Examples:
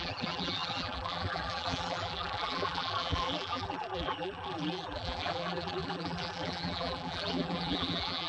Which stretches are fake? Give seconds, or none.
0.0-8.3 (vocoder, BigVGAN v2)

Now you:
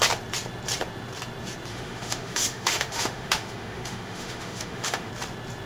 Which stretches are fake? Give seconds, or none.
1.7-5.1 (autoencoder, DAC-VAE)

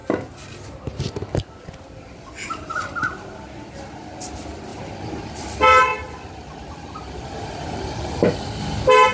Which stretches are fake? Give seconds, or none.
5.9-8.3 (vocoder, BigVGAN v2)

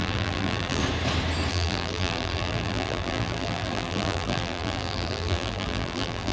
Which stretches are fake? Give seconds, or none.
0.0-0.8 (vocoder, BigVGAN v2); 1.5-6.3